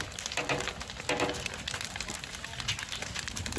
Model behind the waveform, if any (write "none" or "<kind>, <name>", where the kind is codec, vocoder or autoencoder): none